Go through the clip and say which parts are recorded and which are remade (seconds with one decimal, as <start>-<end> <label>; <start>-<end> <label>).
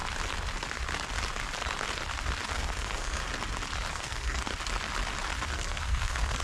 0.0-2.5 recorded; 2.5-3.2 remade; 3.2-3.9 recorded; 3.9-4.5 remade; 4.5-5.5 recorded; 5.5-6.4 remade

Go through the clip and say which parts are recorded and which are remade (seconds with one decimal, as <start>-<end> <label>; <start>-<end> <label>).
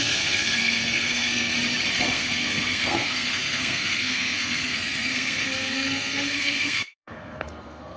0.0-1.5 remade; 1.5-2.0 recorded; 2.0-8.0 remade